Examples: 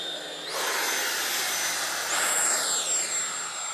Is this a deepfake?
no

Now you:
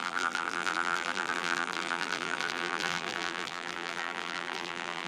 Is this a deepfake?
yes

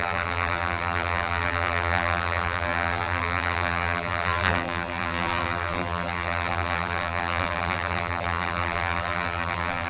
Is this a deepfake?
yes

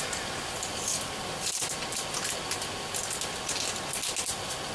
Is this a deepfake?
no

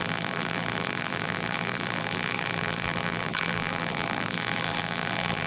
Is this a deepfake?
yes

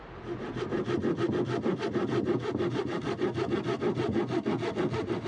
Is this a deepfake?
no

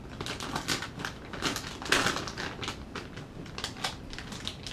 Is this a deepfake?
no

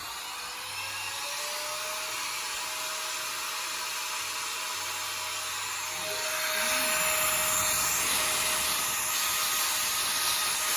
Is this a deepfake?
no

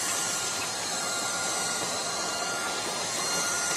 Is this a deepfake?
no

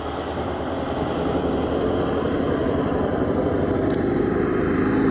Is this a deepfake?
yes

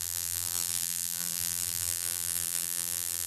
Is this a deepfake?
yes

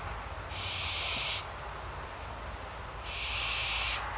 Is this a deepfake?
no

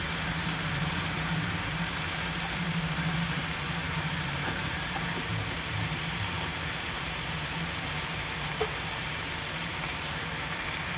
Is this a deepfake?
yes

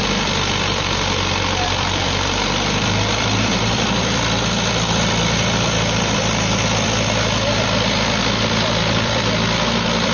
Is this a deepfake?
yes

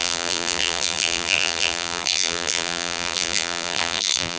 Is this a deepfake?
yes